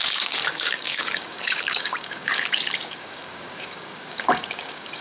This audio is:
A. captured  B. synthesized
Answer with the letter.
B